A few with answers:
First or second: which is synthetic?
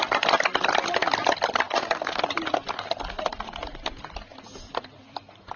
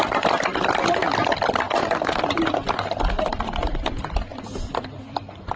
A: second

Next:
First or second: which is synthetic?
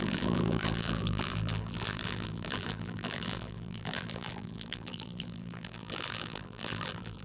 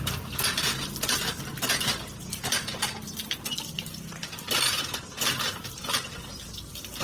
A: first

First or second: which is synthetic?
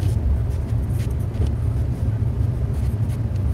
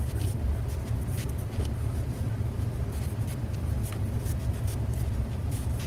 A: second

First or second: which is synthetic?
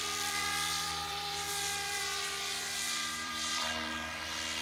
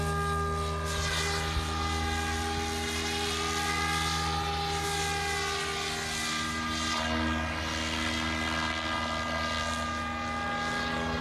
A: first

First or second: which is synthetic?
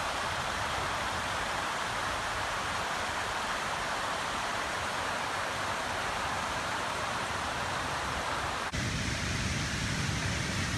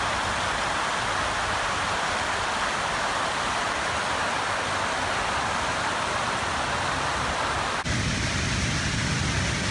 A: first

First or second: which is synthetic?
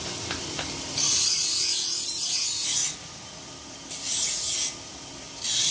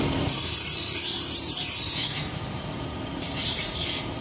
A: second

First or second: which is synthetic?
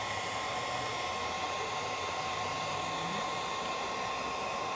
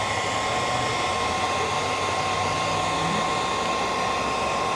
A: first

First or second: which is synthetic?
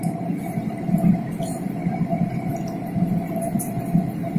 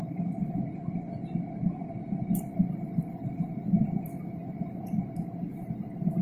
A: second